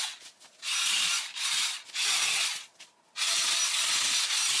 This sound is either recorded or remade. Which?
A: recorded